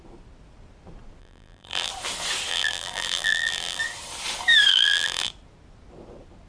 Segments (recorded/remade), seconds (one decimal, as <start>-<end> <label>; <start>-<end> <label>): 0.0-1.2 recorded; 1.2-1.9 remade; 1.9-2.5 recorded; 2.5-3.8 remade; 3.8-4.7 recorded; 4.7-5.3 remade; 5.3-6.5 recorded

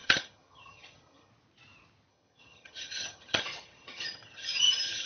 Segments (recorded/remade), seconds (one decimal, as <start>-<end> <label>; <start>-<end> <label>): 0.0-1.3 remade; 1.3-2.1 recorded; 2.1-5.1 remade

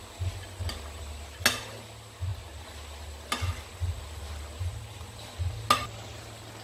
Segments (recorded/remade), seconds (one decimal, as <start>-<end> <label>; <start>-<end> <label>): 0.0-6.6 recorded

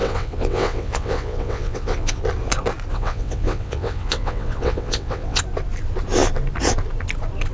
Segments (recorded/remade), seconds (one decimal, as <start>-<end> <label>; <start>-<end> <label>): 0.0-2.2 remade; 2.2-2.9 recorded; 2.9-5.4 remade; 5.4-7.5 recorded

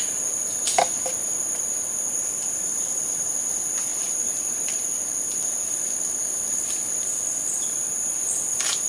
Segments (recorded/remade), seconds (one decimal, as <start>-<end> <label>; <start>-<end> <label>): 0.0-3.9 recorded; 3.9-7.2 remade; 7.2-8.9 recorded